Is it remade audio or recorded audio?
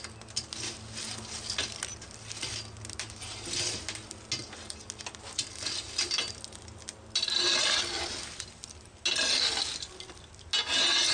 recorded